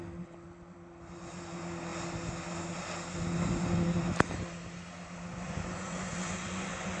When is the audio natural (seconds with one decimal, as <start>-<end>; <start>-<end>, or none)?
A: 0.0-5.3